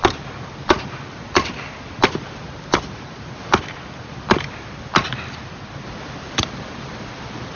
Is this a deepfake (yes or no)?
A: no